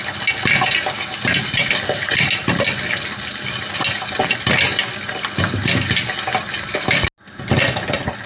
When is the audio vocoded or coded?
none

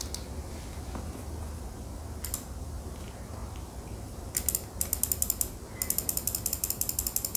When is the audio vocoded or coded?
none

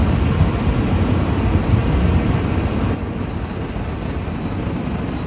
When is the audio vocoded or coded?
none

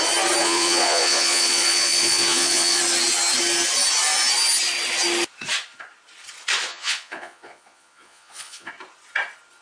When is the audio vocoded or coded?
0.4-2.8 (vocoder, Vocos); 6.7-8.7